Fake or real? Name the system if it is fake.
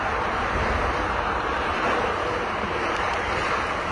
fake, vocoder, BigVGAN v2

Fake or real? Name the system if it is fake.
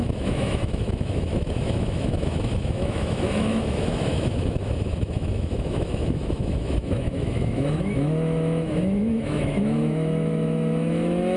fake, autoencoder, DAC-VAE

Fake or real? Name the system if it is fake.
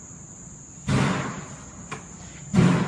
real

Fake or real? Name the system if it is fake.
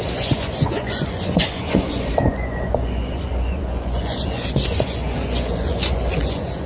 fake, vocoder, Vocos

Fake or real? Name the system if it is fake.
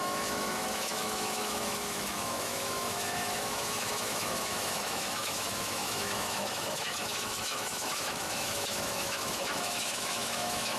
fake, autoencoder, DAC-VAE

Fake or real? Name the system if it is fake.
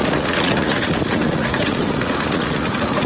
fake, vocoder, Vocos